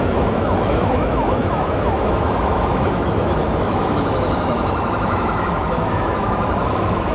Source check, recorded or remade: remade